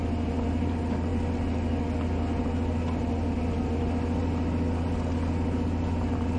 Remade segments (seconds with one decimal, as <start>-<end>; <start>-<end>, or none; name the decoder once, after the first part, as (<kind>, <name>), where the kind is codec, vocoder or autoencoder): none